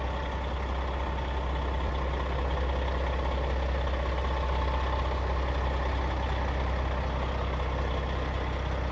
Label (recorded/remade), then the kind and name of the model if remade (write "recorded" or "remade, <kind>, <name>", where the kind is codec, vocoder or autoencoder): recorded